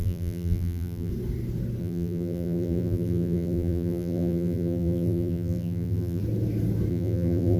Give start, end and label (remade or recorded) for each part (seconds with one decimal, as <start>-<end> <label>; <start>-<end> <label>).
0.0-1.1 remade; 1.1-1.8 recorded; 1.8-6.2 remade; 6.2-6.9 recorded; 6.9-7.6 remade